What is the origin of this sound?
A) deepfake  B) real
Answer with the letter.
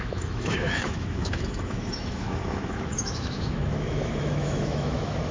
A